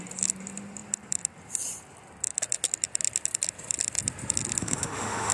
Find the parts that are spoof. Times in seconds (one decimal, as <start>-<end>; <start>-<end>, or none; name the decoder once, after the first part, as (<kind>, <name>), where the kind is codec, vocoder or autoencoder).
4.6-5.3 (autoencoder, DAC-VAE)